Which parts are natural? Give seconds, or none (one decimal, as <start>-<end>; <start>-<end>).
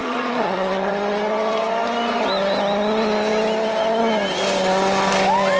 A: 0.9-5.6